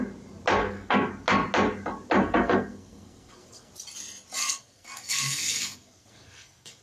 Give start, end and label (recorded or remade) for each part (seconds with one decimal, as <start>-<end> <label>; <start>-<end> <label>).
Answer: 0.0-0.6 recorded; 0.6-1.1 remade; 1.1-2.2 recorded; 2.2-3.7 remade; 3.7-4.4 recorded; 4.4-6.8 remade